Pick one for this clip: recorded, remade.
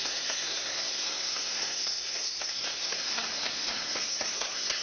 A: remade